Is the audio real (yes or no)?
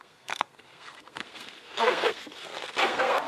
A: no